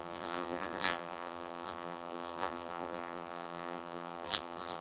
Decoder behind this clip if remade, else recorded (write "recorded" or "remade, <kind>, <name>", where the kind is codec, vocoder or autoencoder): remade, vocoder, BigVGAN v2